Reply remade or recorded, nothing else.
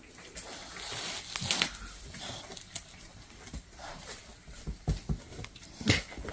recorded